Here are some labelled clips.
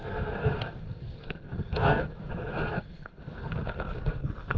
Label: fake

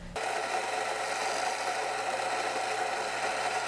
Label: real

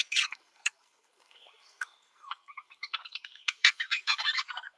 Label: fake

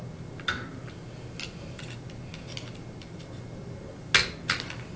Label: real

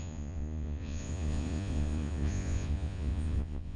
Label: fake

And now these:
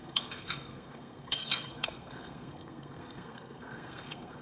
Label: fake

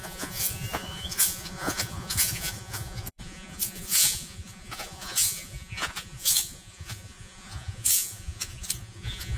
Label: fake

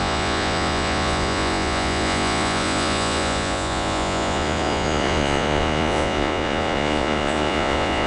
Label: fake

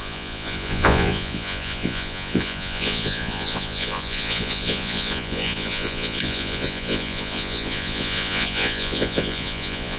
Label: fake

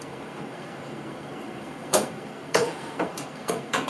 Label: fake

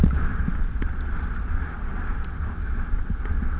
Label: real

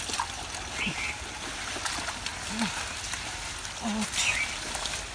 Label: real